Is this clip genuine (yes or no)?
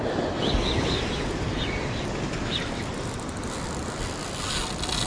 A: yes